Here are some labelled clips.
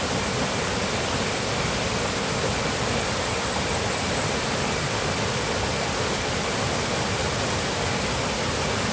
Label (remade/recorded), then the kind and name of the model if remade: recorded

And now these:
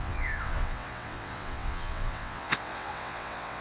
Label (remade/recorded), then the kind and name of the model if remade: remade, vocoder, WaveNeXt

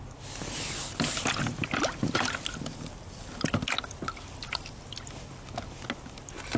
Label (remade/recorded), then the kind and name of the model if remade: recorded